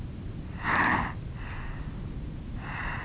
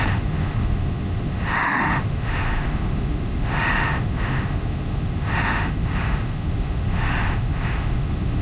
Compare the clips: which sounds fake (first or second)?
second